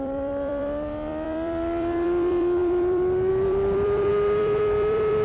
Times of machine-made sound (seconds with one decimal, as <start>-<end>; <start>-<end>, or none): 0.0-5.2